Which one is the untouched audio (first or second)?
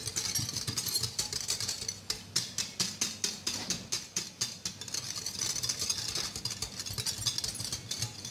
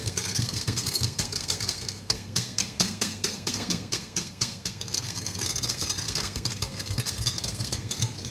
first